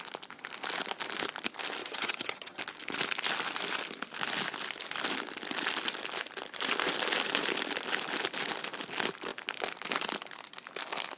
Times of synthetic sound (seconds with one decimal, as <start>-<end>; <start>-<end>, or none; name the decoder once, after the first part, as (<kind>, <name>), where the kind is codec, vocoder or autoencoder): 1.8-2.6 (vocoder, HiFi-GAN)